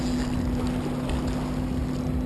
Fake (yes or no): no